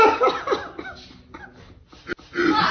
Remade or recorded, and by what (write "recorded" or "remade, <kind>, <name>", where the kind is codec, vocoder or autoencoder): recorded